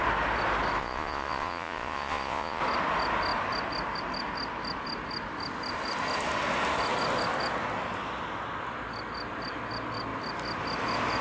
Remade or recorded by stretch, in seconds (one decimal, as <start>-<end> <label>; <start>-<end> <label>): 0.0-0.8 recorded; 0.8-2.6 remade; 2.6-11.2 recorded